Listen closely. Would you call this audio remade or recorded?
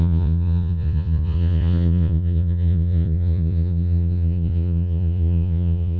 remade